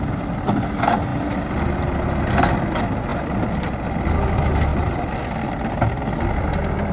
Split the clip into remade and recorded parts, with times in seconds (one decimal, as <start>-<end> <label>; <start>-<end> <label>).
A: 0.0-1.1 recorded; 1.1-1.8 remade; 1.8-3.1 recorded; 3.1-3.7 remade; 3.7-4.7 recorded; 4.7-5.9 remade; 5.9-6.9 recorded